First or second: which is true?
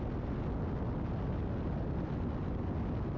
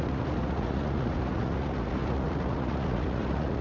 first